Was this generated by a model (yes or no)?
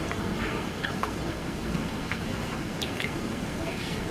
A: yes